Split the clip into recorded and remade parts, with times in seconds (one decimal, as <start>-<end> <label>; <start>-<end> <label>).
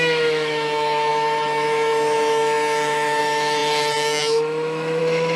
0.0-5.4 remade